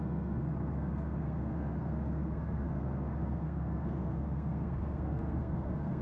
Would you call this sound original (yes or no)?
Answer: no